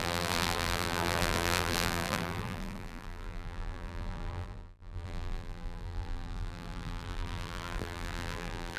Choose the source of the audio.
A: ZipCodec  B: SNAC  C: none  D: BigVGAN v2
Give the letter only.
D